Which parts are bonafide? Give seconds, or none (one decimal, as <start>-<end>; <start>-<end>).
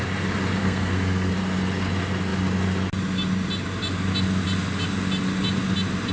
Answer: 0.0-0.6; 1.3-6.1